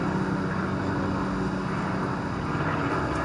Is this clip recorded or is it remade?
recorded